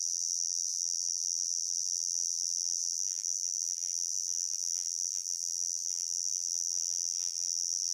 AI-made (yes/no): yes